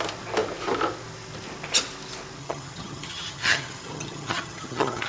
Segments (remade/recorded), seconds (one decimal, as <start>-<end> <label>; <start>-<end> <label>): 0.0-2.4 recorded; 2.4-5.1 remade